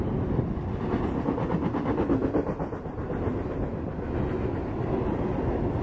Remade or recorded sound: recorded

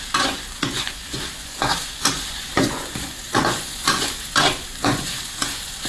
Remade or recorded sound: remade